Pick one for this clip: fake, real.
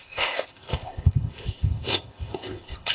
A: fake